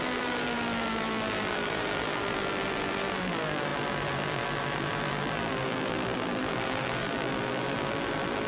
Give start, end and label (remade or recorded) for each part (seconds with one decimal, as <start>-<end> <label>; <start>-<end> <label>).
0.0-8.5 remade